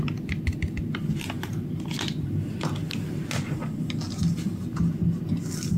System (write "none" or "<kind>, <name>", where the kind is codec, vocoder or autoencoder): none